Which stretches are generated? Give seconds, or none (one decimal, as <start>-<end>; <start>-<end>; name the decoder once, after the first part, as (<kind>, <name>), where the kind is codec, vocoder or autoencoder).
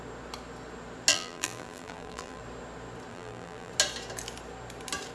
1.1-2.4 (vocoder, BigVGAN v2); 3.1-3.7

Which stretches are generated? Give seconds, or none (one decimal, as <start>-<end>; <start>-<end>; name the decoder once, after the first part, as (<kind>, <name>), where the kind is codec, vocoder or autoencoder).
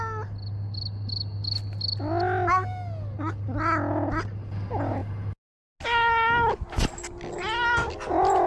none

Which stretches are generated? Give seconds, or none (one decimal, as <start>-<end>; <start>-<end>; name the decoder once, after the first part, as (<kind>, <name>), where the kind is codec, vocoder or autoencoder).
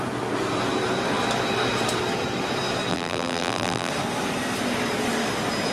2.9-3.9 (vocoder, BigVGAN v2)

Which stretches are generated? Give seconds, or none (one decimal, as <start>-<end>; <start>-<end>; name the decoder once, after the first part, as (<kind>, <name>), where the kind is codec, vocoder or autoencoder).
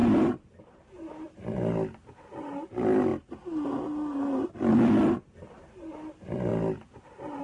0.0-3.1 (vocoder, BigVGAN v2); 4.7-7.4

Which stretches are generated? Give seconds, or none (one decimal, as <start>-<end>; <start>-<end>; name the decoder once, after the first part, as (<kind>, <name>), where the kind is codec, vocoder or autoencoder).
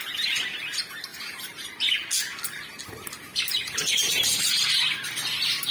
1.1-1.9 (vocoder, BigVGAN v2); 3.3-4.8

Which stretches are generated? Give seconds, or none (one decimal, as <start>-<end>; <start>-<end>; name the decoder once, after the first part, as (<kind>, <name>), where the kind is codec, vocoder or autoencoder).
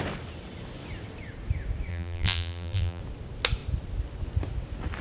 1.9-3.0 (vocoder, BigVGAN v2)